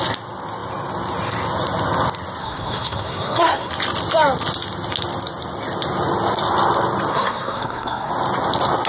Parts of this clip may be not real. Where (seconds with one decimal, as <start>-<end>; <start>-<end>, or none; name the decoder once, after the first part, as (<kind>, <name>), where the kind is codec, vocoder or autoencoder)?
2.4-3.7 (codec, SNAC); 7.1-8.1